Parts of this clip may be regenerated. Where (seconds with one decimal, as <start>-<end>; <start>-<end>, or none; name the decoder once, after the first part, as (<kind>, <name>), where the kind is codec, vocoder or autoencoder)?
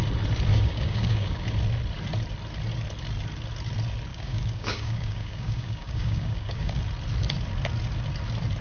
0.5-1.4 (codec, DAC); 4.1-6.8